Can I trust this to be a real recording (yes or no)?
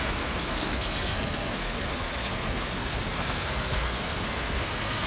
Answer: no